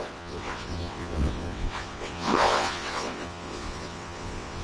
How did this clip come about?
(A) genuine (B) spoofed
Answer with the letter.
B